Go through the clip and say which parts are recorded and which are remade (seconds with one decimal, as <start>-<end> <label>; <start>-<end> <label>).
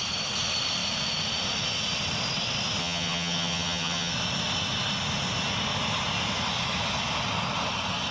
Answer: 0.0-2.8 recorded; 2.8-4.1 remade; 4.1-8.1 recorded